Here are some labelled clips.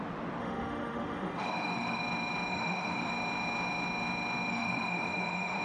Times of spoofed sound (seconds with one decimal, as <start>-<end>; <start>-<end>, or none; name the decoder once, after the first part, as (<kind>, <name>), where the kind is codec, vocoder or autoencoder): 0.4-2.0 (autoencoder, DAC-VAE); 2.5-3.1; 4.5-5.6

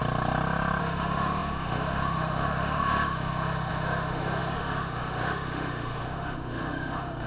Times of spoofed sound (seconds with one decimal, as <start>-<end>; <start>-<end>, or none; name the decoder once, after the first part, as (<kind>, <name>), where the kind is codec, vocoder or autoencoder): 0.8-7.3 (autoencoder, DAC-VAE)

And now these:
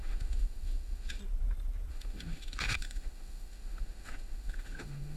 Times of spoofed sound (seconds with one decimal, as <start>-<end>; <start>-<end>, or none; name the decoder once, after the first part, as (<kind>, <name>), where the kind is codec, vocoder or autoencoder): 0.0-1.2 (autoencoder, DAC-VAE); 1.9-5.2

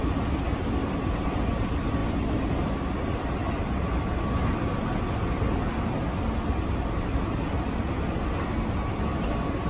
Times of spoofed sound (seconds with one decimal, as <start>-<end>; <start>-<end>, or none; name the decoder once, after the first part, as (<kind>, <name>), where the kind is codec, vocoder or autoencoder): none

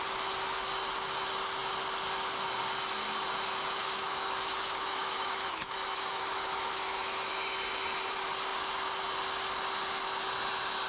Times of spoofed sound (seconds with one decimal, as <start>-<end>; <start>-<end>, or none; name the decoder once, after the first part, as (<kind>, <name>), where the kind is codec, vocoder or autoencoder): 3.8-7.3 (autoencoder, DAC-VAE)

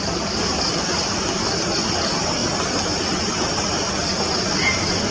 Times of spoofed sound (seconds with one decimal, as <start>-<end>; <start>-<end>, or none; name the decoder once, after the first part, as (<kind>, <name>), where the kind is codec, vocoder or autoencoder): none